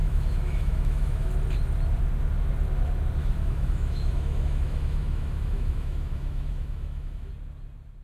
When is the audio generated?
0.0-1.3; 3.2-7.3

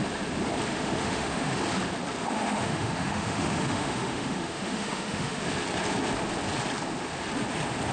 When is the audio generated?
0.7-1.6; 2.2-5.4